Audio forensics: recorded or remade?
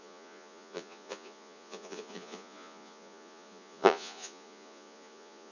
remade